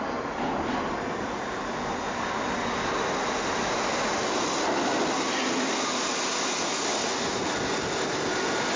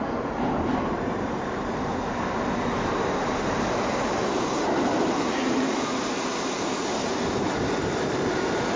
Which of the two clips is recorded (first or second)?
first